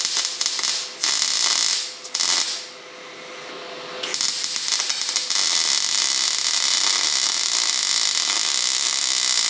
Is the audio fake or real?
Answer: real